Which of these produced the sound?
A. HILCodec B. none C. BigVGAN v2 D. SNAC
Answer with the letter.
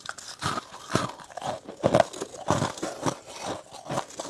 B